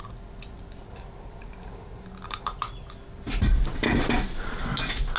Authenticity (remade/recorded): recorded